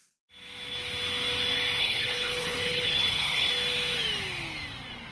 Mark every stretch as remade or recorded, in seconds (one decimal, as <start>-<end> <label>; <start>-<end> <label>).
0.0-1.8 recorded; 1.8-3.5 remade; 3.5-5.1 recorded

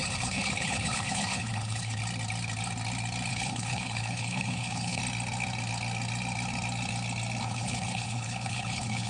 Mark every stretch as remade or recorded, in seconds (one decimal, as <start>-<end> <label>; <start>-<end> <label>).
0.0-2.0 remade; 2.0-3.3 recorded; 3.3-5.0 remade; 5.0-7.4 recorded; 7.4-9.1 remade

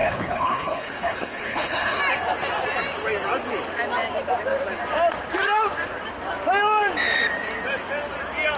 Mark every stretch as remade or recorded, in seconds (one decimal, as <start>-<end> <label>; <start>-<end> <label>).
0.0-2.0 remade; 2.0-8.6 recorded

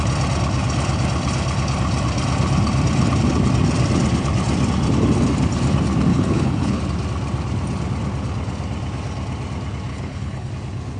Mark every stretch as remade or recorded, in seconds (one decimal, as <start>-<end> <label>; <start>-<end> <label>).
0.0-6.1 recorded; 6.1-6.8 remade; 6.8-9.9 recorded; 9.9-10.5 remade; 10.5-11.0 recorded

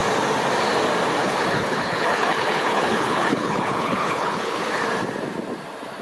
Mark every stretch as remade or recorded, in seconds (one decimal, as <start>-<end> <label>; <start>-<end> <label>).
0.0-1.2 recorded; 1.2-4.8 remade; 4.8-6.0 recorded

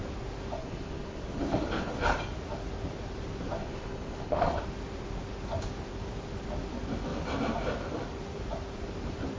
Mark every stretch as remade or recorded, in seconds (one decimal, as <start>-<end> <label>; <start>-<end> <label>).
0.0-0.6 recorded; 0.6-2.2 remade; 2.2-3.6 recorded; 3.6-4.6 remade; 4.6-9.4 recorded

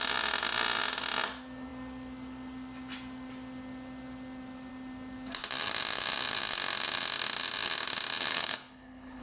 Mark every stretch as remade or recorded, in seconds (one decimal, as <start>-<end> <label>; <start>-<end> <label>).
0.0-8.3 recorded; 8.3-9.2 remade